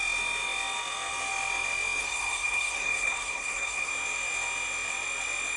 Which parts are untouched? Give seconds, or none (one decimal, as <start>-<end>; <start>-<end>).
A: 0.0-2.0; 3.9-5.6